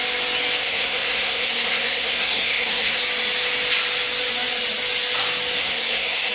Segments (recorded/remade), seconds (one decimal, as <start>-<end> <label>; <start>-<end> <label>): 0.0-0.6 recorded; 0.6-3.0 remade; 3.0-5.6 recorded; 5.6-6.3 remade

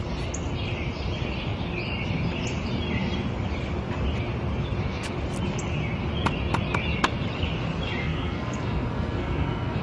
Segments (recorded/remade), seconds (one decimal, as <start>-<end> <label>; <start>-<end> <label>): 0.0-8.0 recorded; 8.0-9.8 remade